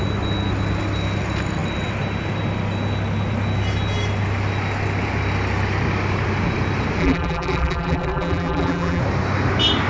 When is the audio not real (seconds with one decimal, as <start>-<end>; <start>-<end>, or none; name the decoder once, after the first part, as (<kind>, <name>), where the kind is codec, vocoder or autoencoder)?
7.0-9.0 (vocoder, BigVGAN v2)